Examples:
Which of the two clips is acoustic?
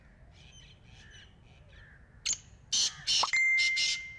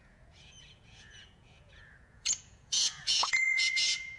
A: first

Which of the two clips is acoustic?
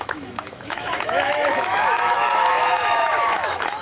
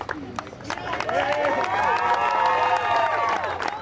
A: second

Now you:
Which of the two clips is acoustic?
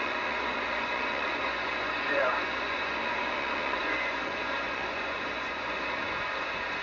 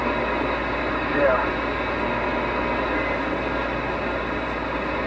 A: second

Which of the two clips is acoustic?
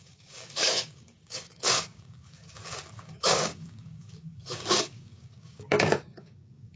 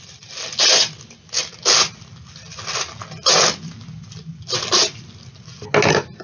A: second